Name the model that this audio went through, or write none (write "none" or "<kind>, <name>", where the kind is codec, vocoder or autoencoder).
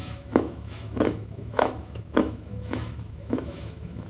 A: autoencoder, DAC-VAE